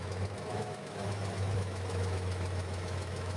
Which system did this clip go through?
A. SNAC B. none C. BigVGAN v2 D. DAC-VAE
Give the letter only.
D